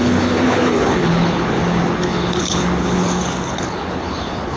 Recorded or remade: remade